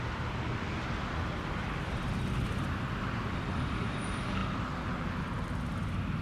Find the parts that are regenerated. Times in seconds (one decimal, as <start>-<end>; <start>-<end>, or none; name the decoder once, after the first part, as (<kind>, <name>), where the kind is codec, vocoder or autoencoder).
none